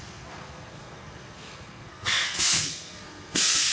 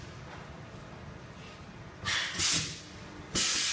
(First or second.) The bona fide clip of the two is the second